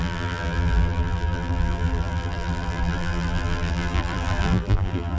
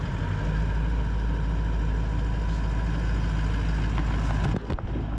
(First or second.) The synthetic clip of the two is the first